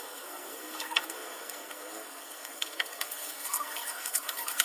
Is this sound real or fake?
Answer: fake